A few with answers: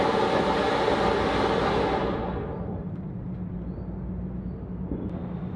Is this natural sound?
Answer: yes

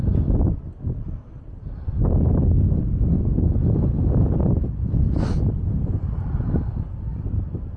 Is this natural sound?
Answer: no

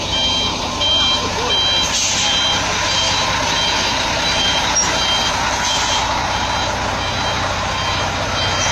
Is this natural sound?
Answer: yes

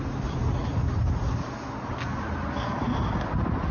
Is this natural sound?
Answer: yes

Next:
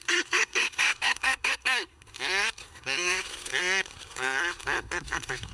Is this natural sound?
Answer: no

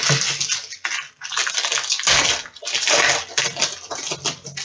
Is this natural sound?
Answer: yes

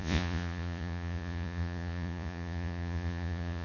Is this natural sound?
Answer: no